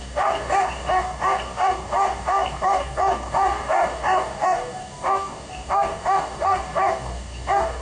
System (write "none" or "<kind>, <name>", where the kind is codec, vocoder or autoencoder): codec, DAC